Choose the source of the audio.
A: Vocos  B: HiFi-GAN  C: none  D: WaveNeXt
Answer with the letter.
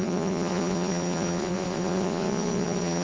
A